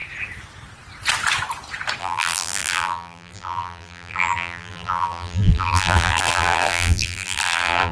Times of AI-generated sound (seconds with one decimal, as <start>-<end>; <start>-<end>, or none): 2.0-7.9